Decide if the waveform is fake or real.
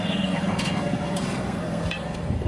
fake